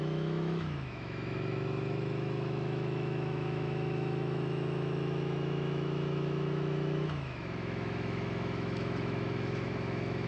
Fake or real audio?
fake